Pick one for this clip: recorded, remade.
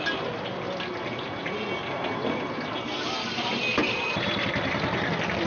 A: recorded